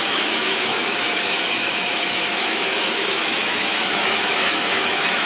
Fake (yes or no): yes